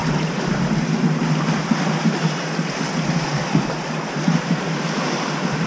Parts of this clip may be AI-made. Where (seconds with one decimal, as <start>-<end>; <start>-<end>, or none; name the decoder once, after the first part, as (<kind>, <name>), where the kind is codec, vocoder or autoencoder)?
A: none